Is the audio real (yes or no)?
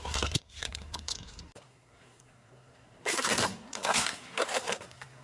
no